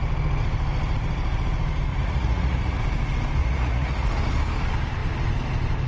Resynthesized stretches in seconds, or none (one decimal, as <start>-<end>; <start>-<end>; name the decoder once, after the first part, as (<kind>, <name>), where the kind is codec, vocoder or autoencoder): 1.9-2.8 (vocoder, Vocos); 3.4-4.1